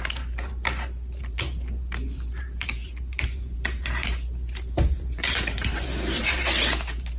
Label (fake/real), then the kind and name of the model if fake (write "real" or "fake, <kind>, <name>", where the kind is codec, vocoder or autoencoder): fake, vocoder, BigVGAN v2